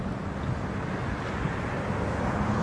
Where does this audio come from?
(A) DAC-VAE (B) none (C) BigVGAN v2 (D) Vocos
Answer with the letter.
B